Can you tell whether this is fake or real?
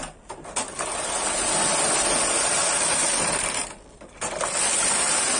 real